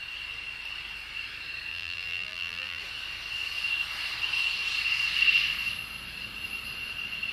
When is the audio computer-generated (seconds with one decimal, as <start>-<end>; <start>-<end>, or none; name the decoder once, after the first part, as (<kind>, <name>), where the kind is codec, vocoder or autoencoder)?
1.7-2.8 (vocoder, BigVGAN v2)